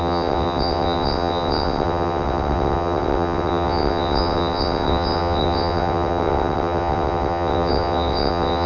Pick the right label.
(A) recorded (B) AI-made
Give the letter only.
B